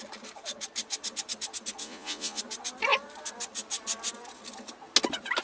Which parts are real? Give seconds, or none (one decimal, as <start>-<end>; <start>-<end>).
0.0-1.8; 2.4-5.4